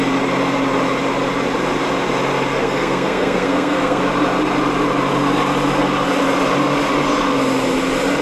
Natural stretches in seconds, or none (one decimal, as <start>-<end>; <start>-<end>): 0.0-2.6; 4.0-8.2